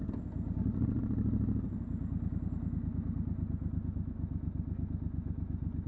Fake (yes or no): no